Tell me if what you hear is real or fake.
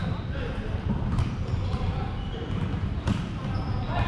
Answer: fake